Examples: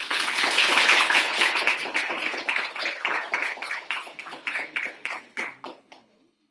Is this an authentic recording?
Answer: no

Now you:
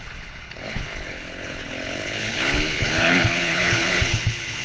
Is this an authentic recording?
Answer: no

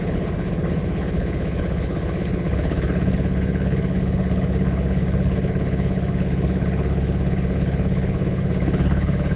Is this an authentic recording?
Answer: no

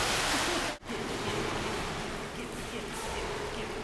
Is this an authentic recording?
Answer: yes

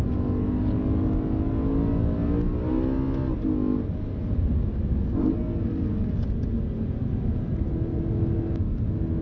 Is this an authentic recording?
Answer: yes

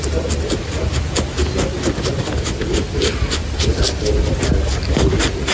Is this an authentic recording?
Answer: yes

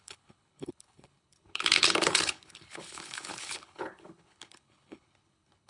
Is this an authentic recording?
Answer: no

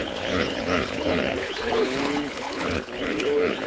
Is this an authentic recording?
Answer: no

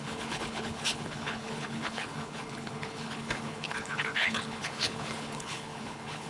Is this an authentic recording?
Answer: no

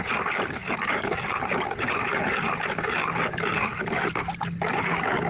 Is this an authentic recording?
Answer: yes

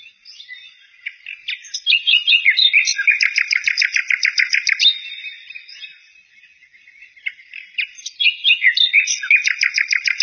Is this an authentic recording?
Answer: yes